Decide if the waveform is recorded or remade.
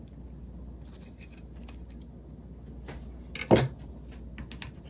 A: recorded